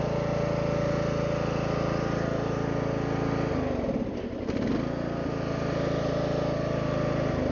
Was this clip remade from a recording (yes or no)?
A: no